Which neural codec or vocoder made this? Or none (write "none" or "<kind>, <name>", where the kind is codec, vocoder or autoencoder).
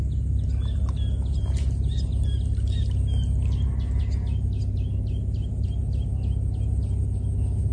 none